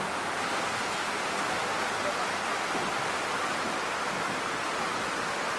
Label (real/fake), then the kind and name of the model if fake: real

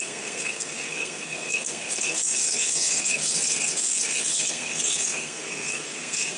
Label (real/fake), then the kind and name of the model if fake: fake, codec, SNAC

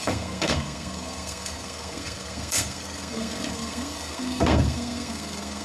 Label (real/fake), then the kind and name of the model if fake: fake, codec, SNAC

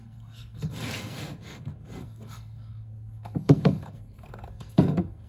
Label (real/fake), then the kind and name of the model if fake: fake, codec, SNAC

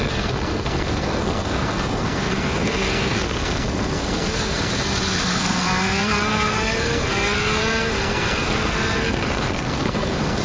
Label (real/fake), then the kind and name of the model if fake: fake, codec, SNAC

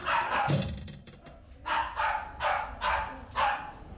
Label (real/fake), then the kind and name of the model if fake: real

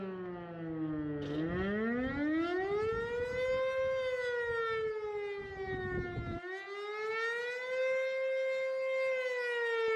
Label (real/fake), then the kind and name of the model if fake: real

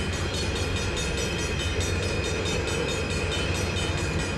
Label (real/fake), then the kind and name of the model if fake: real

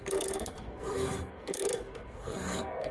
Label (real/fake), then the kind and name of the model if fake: fake, codec, SNAC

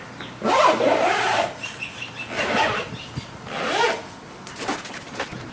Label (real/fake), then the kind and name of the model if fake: real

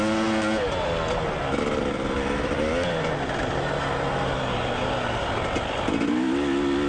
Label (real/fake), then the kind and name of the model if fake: real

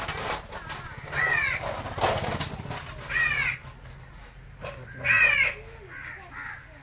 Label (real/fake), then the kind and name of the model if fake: real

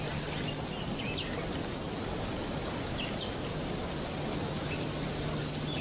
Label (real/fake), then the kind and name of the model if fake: real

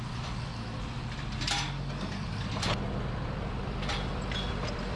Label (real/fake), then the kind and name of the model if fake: real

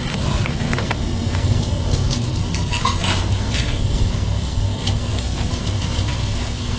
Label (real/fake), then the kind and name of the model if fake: fake, codec, SNAC